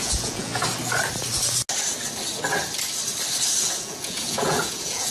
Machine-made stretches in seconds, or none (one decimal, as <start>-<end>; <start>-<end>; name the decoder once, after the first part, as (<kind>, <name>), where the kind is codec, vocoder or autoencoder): 0.0-0.5 (vocoder, Vocos); 3.6-5.1